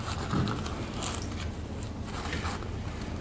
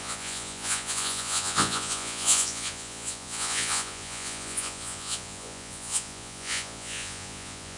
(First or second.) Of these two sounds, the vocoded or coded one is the second